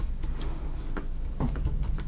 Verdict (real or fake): real